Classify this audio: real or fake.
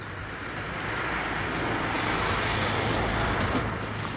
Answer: real